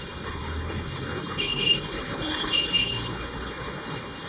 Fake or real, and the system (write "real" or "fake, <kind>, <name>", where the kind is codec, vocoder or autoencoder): fake, codec, HILCodec